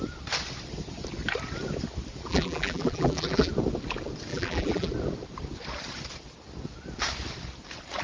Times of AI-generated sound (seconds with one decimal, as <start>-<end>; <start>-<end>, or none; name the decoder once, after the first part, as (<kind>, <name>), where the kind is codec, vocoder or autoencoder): 2.3-3.5 (vocoder, BigVGAN v2); 4.3-4.9